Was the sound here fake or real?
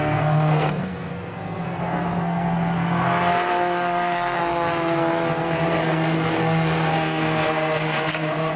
fake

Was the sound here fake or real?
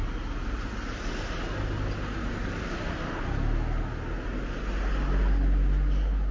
real